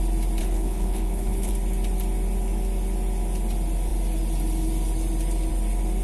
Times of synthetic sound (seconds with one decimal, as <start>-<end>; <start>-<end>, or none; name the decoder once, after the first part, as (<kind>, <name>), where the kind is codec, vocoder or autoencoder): 0.4-1.5 (codec, HILCodec)